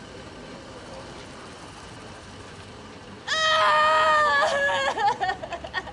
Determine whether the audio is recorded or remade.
recorded